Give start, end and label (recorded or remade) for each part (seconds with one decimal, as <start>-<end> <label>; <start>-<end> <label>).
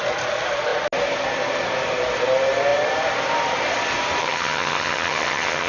0.0-4.2 recorded; 4.2-5.7 remade